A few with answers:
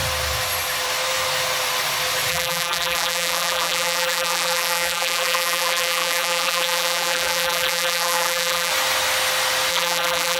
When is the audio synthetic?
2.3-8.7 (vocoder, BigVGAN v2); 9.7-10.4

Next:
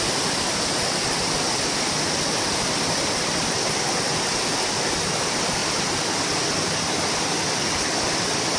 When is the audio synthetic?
none